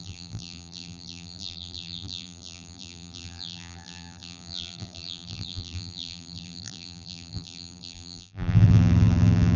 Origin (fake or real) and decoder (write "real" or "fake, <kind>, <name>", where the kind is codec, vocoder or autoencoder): fake, vocoder, BigVGAN v2